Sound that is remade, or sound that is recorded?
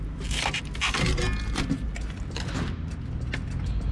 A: recorded